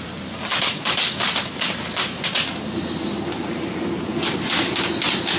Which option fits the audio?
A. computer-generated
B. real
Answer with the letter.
B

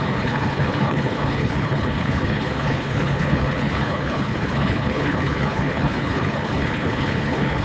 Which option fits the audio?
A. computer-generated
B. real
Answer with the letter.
A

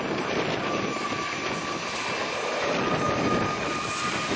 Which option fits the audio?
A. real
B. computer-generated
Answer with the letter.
A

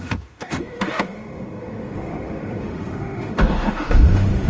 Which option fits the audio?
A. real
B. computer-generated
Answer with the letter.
B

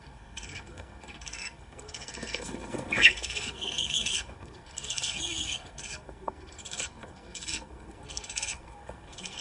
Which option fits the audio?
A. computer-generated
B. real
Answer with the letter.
A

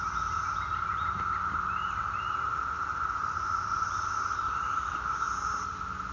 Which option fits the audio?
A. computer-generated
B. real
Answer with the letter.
B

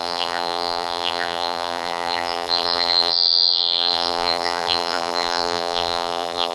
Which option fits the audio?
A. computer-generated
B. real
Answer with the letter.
A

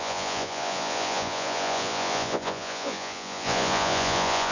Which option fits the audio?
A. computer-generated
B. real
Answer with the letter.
A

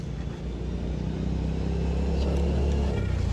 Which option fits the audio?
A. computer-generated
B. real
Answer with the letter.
B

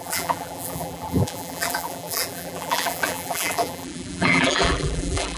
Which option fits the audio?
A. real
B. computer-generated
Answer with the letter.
B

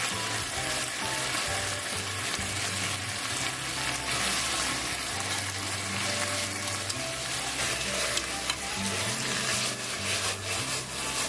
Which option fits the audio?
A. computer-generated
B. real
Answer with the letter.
B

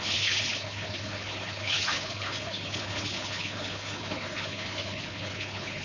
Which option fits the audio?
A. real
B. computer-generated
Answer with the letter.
B